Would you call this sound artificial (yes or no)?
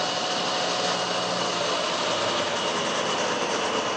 no